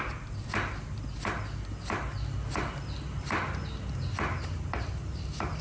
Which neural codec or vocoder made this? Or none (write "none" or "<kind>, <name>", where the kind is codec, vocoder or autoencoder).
none